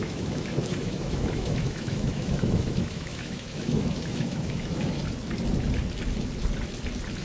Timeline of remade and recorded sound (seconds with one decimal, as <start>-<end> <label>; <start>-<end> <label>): 0.0-5.0 remade; 5.0-7.2 recorded